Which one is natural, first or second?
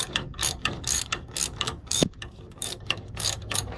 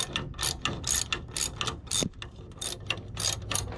second